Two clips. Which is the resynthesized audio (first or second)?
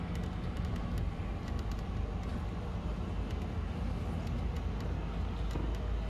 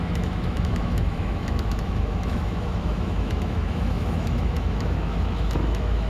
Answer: second